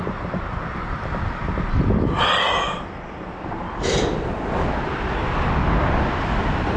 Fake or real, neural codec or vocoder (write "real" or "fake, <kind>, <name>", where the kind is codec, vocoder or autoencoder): real